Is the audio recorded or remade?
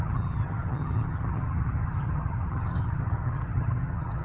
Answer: remade